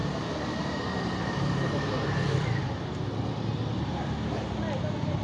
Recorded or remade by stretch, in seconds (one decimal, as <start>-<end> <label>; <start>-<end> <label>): 0.0-1.9 remade; 1.9-5.2 recorded